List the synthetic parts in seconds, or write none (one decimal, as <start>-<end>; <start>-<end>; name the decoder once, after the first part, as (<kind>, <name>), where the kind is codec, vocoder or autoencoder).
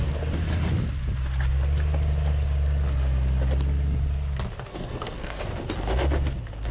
4.7-5.4 (codec, SNAC)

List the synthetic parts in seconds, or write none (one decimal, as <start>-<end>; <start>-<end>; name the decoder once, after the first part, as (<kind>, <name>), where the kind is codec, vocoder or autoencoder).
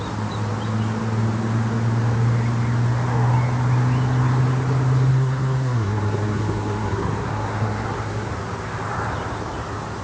5.1-8.3 (codec, SNAC)